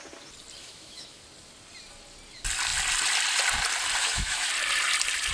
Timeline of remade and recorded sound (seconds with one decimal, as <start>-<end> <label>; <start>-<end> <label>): 0.0-0.6 recorded; 0.6-1.2 remade; 1.2-4.0 recorded; 4.0-4.5 remade; 4.5-5.3 recorded